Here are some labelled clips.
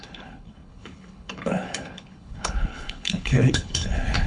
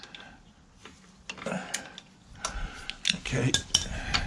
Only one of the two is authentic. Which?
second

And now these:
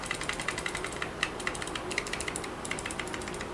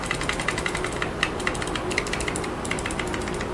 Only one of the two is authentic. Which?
second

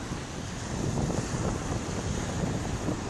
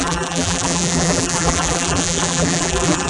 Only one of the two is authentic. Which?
first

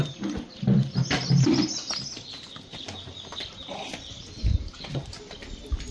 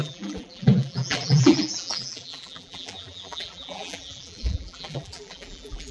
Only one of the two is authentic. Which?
first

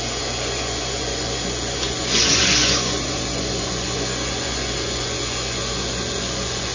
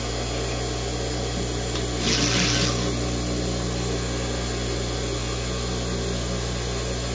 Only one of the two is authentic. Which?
second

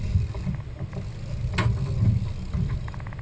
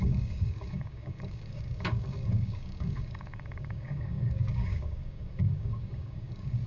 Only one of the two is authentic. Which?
first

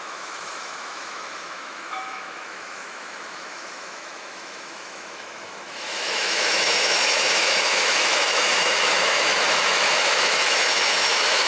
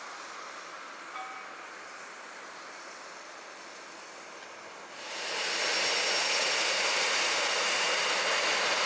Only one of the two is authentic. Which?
second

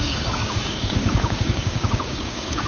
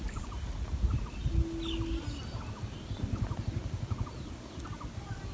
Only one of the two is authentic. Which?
second